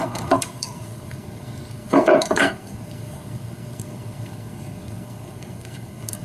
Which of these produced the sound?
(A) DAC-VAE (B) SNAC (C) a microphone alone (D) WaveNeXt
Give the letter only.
B